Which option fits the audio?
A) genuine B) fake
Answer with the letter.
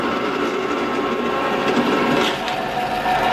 A